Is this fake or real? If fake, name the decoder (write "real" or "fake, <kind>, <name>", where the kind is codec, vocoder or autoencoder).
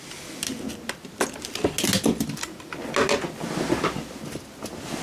real